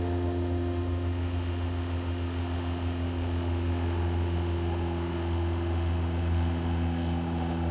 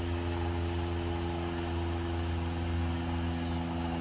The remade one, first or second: first